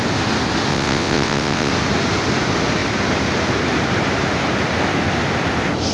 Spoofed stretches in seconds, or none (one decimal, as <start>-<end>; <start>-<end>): 0.7-1.7

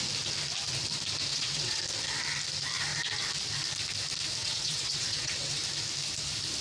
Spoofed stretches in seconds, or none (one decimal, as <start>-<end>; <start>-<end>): 1.3-1.8; 4.4-5.6

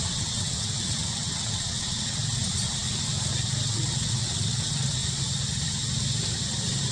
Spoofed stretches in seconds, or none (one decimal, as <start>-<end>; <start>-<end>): 0.0-2.4; 3.6-5.0

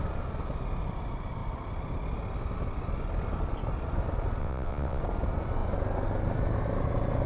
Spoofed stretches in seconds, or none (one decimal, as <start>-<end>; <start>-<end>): 4.4-5.0

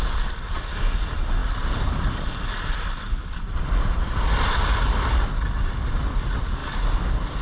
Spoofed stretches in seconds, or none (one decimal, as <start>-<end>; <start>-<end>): none

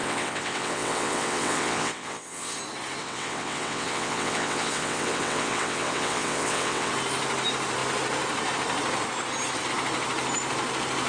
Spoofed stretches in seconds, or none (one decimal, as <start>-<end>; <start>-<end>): 0.0-2.6; 3.0-6.9

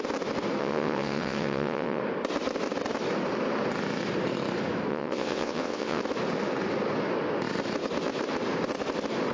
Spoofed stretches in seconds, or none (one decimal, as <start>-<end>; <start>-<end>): 0.6-2.0; 4.9-6.0

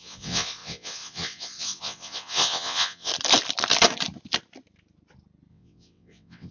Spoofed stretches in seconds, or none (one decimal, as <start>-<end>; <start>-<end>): 0.0-3.1; 5.5-6.5